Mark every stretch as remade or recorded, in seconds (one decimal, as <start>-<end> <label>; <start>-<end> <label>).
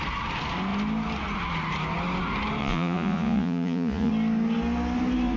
0.0-2.6 recorded; 2.6-4.1 remade; 4.1-5.4 recorded